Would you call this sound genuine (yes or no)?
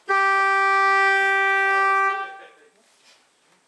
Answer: yes